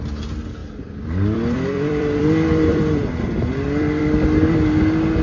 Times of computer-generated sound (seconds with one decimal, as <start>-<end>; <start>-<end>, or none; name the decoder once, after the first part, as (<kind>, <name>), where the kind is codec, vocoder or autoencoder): 0.6-2.2 (vocoder, BigVGAN v2); 2.7-4.0